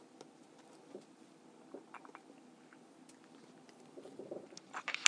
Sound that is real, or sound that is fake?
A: real